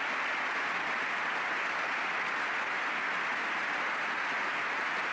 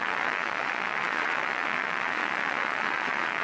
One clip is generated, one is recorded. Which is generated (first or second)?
second